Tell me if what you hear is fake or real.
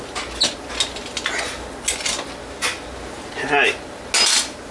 real